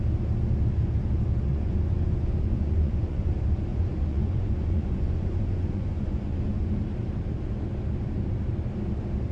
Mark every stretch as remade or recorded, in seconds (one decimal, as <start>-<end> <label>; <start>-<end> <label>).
0.0-1.5 recorded; 1.5-3.3 remade; 3.3-3.7 recorded; 3.7-6.7 remade; 6.7-9.3 recorded